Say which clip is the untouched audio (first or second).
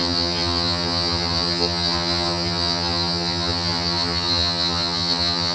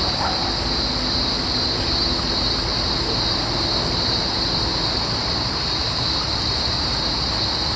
second